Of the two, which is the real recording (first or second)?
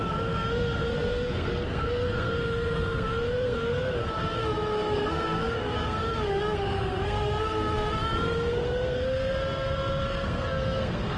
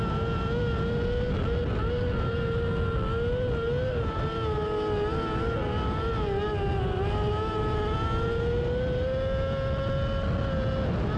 second